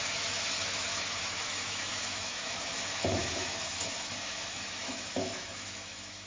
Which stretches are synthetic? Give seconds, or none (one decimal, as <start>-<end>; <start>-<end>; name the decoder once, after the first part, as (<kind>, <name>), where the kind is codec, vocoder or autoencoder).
0.0-6.3 (autoencoder, DAC-VAE)

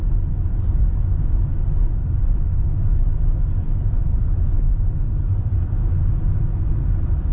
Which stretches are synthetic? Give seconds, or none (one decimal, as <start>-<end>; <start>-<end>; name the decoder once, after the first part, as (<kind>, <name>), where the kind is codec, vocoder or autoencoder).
none

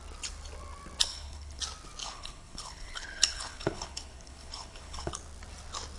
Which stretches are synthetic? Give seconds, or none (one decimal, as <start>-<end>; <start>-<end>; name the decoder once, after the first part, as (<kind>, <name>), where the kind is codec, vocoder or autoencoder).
1.1-1.6 (codec, HILCodec); 2.0-5.1